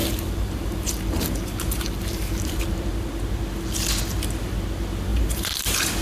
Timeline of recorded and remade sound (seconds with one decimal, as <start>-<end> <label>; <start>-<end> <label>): 0.0-2.6 remade; 2.6-5.1 recorded; 5.1-5.6 remade; 5.6-6.0 recorded